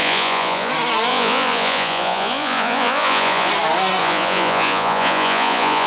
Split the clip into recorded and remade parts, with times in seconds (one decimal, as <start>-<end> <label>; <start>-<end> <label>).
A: 0.0-0.7 remade; 0.7-1.1 recorded; 1.1-3.5 remade; 3.5-4.0 recorded; 4.0-5.9 remade